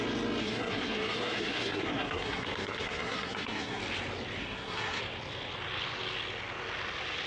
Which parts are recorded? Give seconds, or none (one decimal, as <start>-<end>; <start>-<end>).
0.0-0.4; 3.8-4.4; 5.0-7.3